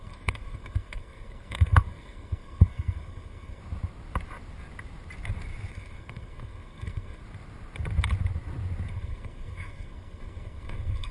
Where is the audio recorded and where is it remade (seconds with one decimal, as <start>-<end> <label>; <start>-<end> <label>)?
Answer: 0.0-3.6 remade; 3.6-5.7 recorded; 5.7-7.2 remade; 7.2-8.9 recorded; 8.9-11.1 remade